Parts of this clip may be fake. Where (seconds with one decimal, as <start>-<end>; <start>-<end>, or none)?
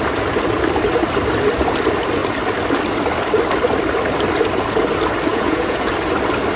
5.3-5.9